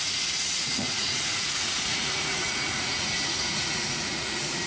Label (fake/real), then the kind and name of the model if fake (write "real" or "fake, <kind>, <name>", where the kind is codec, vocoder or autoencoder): fake, vocoder, Vocos